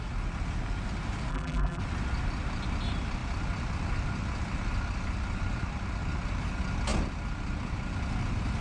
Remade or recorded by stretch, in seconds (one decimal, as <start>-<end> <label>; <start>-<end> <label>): 0.0-1.3 recorded; 1.3-1.8 remade; 1.8-8.6 recorded